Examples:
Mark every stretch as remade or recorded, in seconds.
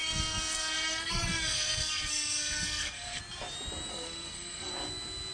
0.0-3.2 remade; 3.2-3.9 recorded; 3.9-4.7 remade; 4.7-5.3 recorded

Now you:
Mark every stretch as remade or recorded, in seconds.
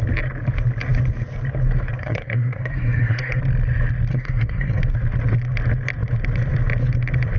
0.0-2.0 recorded; 2.0-3.4 remade; 3.4-4.1 recorded; 4.1-4.8 remade; 4.8-7.4 recorded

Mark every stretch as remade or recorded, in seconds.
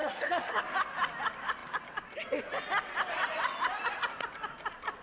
0.0-0.6 remade; 0.6-5.0 recorded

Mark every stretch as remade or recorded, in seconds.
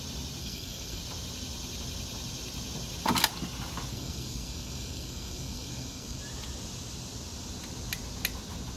0.0-0.4 recorded; 0.4-1.0 remade; 1.0-3.9 recorded; 3.9-6.2 remade; 6.2-8.8 recorded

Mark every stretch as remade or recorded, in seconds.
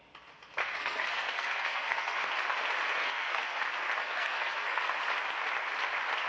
0.0-0.6 recorded; 0.6-2.3 remade; 2.3-3.0 recorded; 3.0-3.6 remade; 3.6-4.0 recorded; 4.0-4.9 remade; 4.9-6.3 recorded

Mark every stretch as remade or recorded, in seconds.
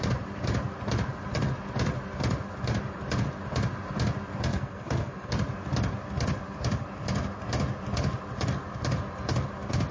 0.0-4.5 recorded; 4.5-5.3 remade; 5.3-9.9 recorded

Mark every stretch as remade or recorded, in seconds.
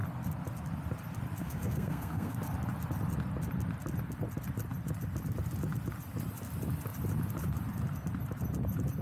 0.0-1.4 recorded; 1.4-2.4 remade; 2.4-9.0 recorded